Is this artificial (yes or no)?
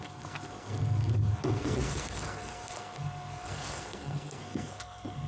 yes